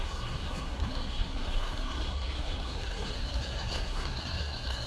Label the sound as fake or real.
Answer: fake